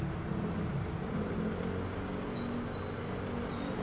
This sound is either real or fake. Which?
real